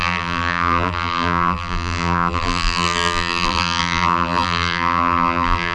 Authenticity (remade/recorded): remade